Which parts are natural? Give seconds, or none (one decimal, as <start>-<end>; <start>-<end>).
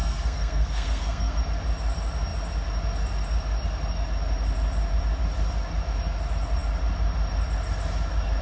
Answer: 1.4-8.4